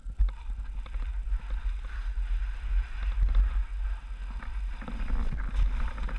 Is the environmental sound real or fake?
real